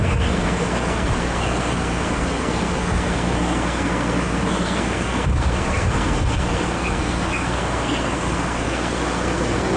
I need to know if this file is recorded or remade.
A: remade